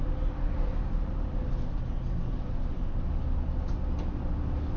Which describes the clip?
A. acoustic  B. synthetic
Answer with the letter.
A